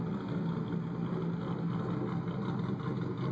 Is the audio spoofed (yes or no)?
no